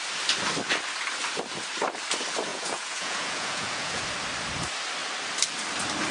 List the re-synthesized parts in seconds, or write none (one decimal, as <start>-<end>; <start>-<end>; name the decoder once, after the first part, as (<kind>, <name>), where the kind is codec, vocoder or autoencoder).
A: 2.5-4.0 (vocoder, Vocos)